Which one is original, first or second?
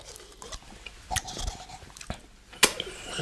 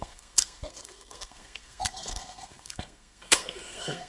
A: first